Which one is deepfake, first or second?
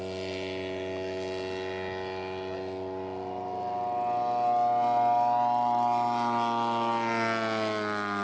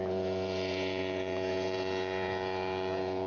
second